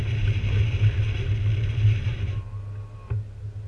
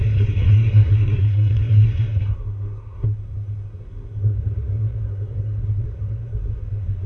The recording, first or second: first